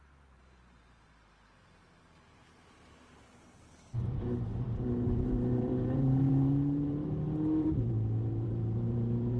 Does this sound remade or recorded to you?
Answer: remade